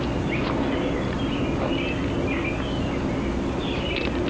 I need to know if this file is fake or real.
real